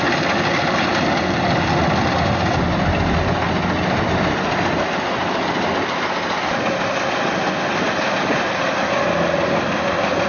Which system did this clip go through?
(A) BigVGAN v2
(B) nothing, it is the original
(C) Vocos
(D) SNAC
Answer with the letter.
B